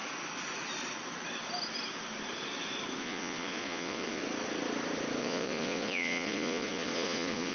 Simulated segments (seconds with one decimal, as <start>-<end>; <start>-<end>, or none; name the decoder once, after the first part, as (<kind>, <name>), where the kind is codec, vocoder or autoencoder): 3.0-4.2 (vocoder, Vocos); 5.2-7.5